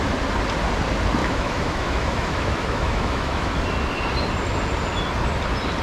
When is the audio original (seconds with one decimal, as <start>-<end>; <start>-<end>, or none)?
0.0-1.2; 3.6-5.8